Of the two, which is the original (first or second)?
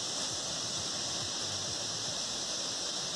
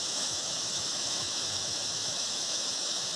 first